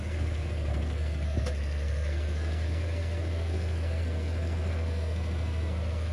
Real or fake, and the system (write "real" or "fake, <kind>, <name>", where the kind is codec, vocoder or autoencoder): fake, codec, SNAC